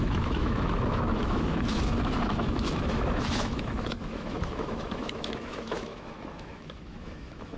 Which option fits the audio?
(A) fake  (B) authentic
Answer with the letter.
A